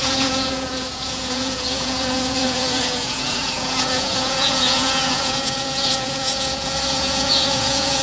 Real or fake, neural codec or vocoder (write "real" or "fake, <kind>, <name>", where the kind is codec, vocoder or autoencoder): fake, vocoder, Vocos